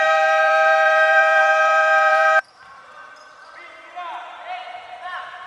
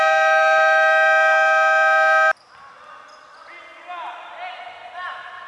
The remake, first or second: first